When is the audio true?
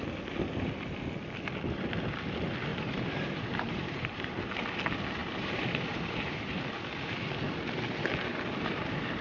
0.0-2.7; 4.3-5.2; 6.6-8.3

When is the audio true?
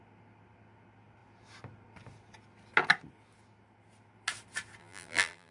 0.0-4.8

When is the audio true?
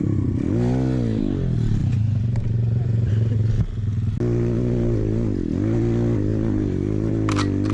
0.0-1.8; 3.1-6.3; 7.1-7.7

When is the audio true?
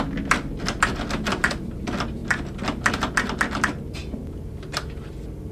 0.0-4.0; 5.1-5.5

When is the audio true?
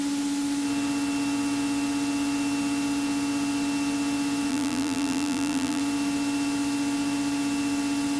0.0-4.5; 5.8-8.2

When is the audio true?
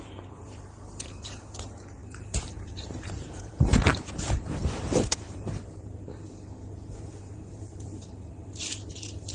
none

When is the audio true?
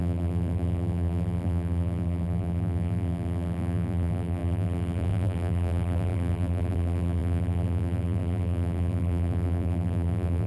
none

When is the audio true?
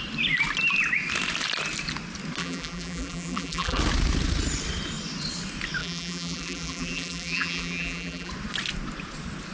0.0-2.4; 3.8-5.8; 8.3-9.5